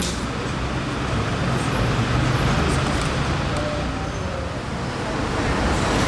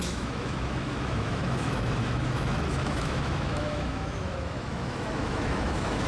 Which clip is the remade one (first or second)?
second